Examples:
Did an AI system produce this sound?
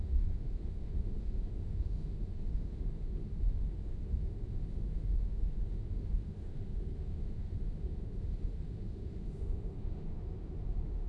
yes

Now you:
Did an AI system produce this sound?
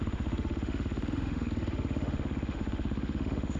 yes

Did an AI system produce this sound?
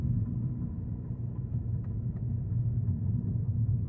no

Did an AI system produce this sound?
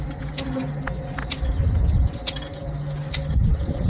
no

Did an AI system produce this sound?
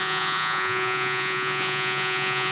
yes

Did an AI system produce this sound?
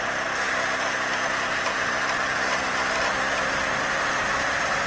no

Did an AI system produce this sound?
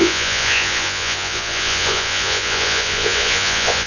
yes